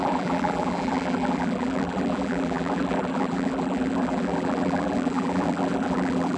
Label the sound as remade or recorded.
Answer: remade